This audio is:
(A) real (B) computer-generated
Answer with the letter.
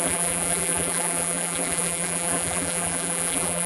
B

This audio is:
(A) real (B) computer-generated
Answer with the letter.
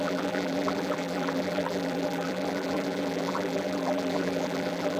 B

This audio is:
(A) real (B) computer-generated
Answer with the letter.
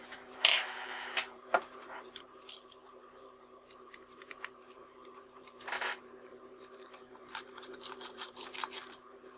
B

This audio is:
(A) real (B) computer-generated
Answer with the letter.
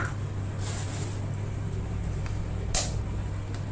A